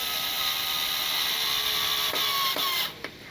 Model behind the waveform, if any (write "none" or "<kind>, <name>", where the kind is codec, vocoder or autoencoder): none